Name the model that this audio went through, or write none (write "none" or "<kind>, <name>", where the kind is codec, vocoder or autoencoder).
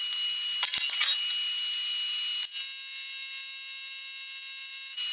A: none